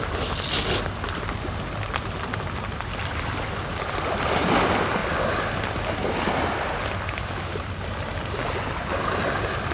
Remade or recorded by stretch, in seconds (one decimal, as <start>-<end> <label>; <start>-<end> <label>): 0.0-9.7 recorded